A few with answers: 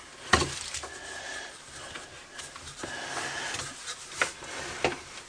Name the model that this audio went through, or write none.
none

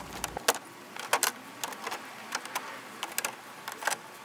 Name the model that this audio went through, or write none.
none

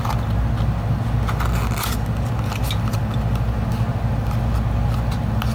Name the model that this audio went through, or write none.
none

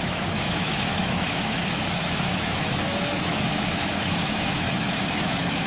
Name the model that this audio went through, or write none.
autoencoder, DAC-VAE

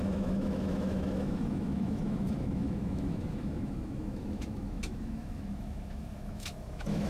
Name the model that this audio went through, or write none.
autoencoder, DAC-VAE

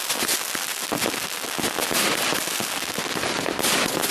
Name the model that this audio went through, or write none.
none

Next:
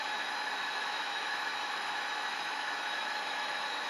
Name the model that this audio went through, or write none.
autoencoder, DAC-VAE